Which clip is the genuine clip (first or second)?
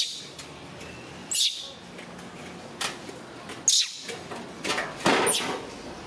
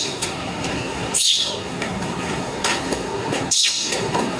first